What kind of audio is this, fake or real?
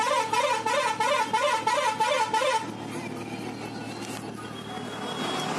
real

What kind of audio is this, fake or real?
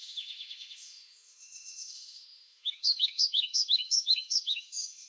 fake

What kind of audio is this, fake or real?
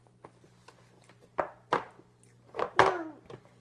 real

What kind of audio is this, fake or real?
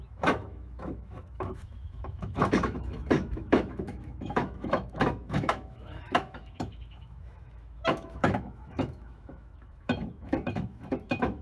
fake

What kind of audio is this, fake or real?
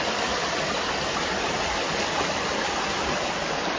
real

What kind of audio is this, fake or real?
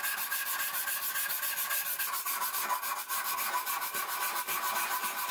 real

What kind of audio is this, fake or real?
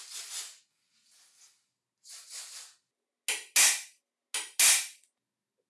real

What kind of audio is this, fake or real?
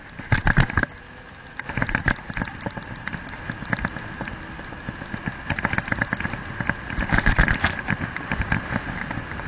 real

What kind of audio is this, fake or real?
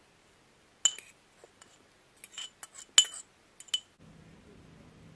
real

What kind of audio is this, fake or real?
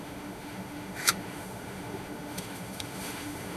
fake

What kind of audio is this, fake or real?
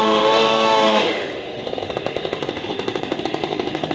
fake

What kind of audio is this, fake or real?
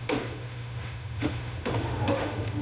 fake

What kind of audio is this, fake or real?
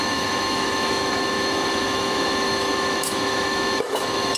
fake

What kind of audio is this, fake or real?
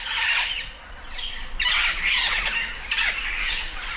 real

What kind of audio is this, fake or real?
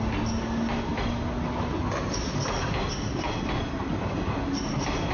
real